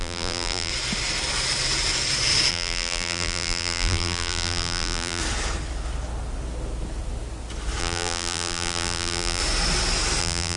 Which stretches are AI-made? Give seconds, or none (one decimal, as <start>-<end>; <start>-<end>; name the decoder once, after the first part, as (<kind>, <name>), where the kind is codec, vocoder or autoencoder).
0.0-0.7 (vocoder, BigVGAN v2); 2.5-5.2; 7.8-9.4; 10.2-10.6